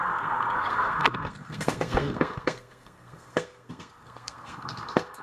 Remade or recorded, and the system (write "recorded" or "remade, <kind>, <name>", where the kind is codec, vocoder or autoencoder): remade, codec, SNAC